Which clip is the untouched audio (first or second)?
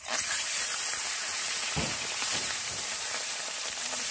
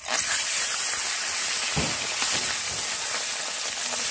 second